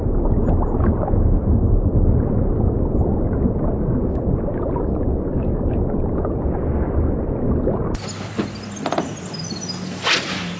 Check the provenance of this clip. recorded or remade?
recorded